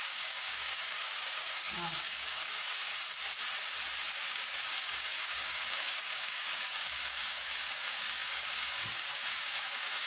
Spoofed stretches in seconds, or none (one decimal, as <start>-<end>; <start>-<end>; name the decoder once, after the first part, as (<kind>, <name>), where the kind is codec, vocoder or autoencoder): 0.0-2.9 (codec, DAC); 4.2-10.1